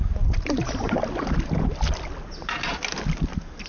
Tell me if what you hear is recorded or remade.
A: recorded